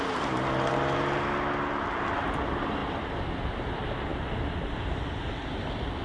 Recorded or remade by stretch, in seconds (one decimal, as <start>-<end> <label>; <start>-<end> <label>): 0.0-6.0 recorded